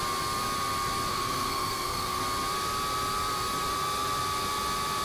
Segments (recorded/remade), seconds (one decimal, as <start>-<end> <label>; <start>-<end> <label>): 0.0-1.1 recorded; 1.1-2.2 remade; 2.2-5.0 recorded